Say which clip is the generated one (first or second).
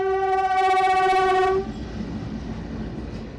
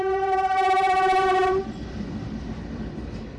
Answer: second